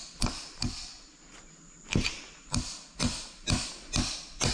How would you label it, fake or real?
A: real